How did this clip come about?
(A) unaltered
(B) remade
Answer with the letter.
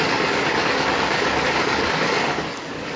B